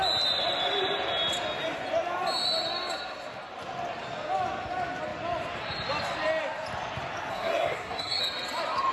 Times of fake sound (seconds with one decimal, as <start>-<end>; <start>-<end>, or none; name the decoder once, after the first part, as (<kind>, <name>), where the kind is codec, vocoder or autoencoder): 7.3-8.2 (codec, SNAC)